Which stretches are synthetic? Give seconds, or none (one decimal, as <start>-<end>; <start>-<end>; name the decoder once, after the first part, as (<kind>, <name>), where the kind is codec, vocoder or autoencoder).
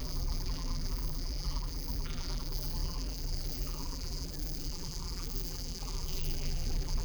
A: 0.0-7.0 (vocoder, BigVGAN v2)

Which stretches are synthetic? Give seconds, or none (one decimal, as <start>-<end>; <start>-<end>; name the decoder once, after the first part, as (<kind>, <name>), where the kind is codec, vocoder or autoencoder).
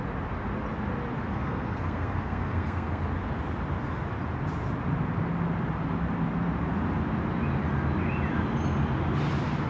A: 1.3-3.0 (codec, SNAC)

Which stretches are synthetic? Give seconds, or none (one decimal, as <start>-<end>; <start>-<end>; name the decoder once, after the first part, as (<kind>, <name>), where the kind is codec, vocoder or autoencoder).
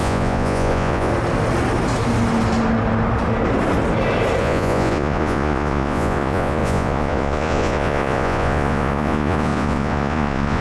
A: 0.0-1.1 (vocoder, Vocos); 4.4-10.6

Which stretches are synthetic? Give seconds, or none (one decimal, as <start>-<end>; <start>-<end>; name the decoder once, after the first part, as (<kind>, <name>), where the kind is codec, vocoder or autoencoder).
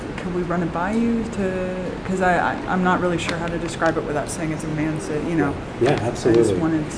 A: none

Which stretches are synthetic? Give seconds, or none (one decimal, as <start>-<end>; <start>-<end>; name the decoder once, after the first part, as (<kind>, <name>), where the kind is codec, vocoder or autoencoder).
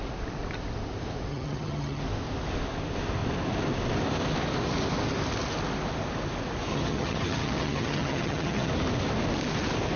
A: 1.3-2.0 (vocoder, HiFi-GAN); 6.7-8.7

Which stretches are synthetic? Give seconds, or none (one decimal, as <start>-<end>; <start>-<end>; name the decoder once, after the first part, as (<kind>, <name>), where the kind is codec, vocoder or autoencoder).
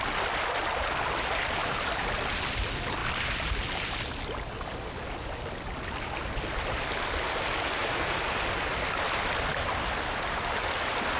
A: none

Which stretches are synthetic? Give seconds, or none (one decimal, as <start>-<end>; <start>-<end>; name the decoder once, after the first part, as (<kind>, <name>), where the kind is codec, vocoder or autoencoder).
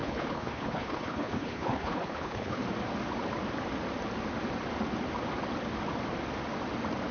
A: 0.0-2.6 (codec, HILCodec)